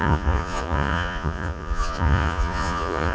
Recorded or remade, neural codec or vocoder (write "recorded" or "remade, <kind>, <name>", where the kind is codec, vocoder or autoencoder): remade, vocoder, Vocos